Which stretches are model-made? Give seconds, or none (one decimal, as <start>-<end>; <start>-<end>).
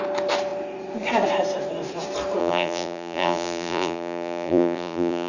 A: 2.4-5.3